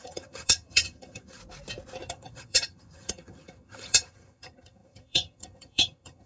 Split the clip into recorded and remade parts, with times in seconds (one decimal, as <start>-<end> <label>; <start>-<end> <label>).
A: 0.0-1.4 remade; 1.4-2.1 recorded; 2.1-6.3 remade

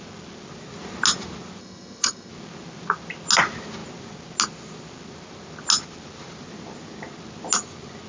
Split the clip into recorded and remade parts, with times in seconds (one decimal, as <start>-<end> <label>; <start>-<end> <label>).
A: 0.0-1.6 recorded; 1.6-2.3 remade; 2.3-8.1 recorded

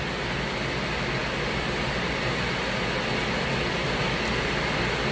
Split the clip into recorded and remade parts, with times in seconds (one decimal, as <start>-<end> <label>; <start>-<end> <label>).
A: 0.0-5.1 recorded

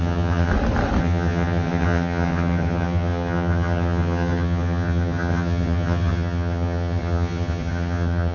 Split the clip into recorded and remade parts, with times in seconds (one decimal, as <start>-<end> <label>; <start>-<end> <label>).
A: 0.0-0.5 remade; 0.5-1.0 recorded; 1.0-8.3 remade

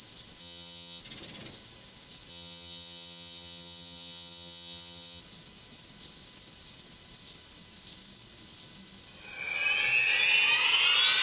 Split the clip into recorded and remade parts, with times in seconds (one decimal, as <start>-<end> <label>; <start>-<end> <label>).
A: 0.0-0.4 recorded; 0.4-1.0 remade; 1.0-2.3 recorded; 2.3-5.2 remade; 5.2-11.2 recorded

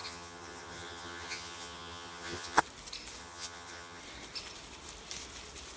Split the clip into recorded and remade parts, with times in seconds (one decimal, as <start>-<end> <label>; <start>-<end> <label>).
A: 0.0-2.6 remade; 2.6-3.2 recorded; 3.2-4.0 remade; 4.0-5.8 recorded

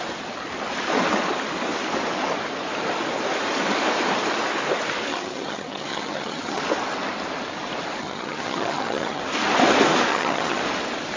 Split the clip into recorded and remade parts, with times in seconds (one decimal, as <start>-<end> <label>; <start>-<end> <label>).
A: 0.0-5.1 recorded; 5.1-6.6 remade; 6.6-8.0 recorded; 8.0-9.2 remade; 9.2-10.1 recorded; 10.1-10.6 remade; 10.6-11.2 recorded